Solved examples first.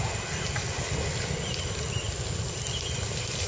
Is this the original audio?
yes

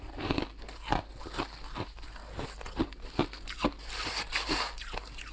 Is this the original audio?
yes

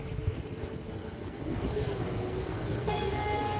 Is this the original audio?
no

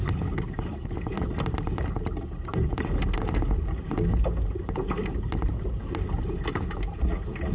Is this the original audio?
yes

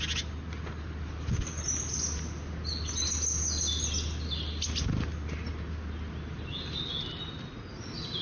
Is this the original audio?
yes